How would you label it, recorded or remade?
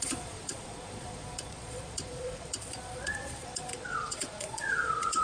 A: remade